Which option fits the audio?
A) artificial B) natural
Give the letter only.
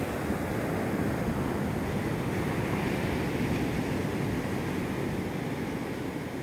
B